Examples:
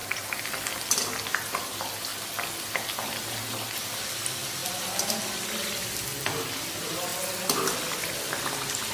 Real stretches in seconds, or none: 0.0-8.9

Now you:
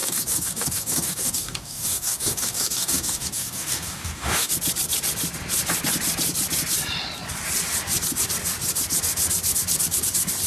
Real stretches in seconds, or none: 4.5-10.5

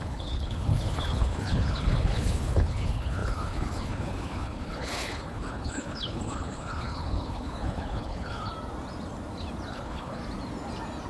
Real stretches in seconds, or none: 8.5-9.7; 10.2-11.1

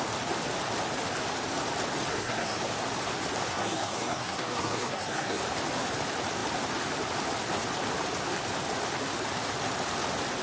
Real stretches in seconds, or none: 0.0-2.1; 2.6-3.5; 5.4-10.4